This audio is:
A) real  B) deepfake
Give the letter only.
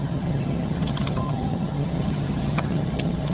B